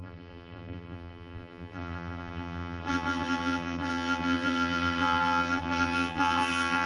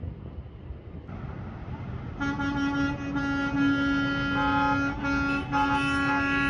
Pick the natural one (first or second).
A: second